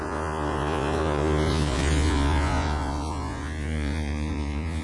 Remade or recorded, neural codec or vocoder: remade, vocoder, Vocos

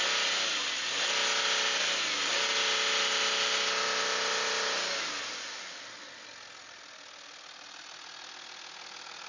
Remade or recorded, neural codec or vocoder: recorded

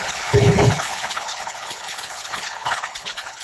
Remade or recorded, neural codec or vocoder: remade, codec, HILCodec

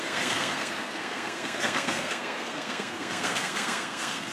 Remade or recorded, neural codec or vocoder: remade, codec, SNAC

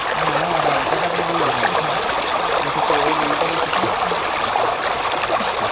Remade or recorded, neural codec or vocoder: recorded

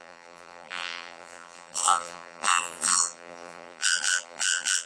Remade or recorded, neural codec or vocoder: remade, vocoder, BigVGAN v2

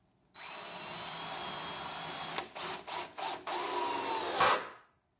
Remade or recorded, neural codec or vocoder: recorded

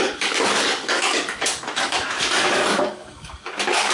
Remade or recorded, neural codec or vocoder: remade, codec, DAC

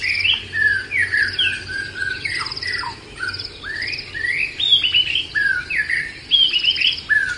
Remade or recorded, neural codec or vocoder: recorded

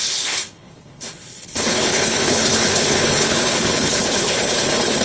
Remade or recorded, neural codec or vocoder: remade, codec, HILCodec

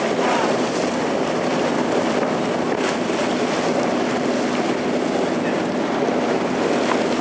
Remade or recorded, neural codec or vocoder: recorded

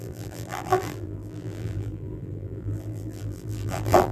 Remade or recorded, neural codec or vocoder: remade, vocoder, BigVGAN v2